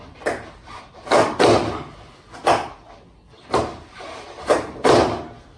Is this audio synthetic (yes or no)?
no